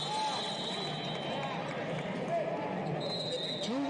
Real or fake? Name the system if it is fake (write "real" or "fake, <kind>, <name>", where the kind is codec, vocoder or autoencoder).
real